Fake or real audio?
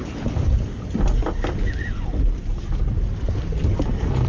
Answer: real